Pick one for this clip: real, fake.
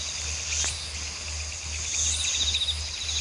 real